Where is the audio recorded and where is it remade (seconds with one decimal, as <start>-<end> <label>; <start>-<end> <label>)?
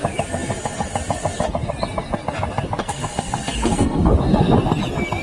0.0-2.8 recorded; 2.8-4.0 remade; 4.0-5.2 recorded